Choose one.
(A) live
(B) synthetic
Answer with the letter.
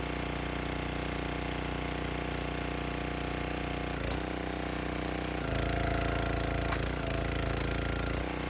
A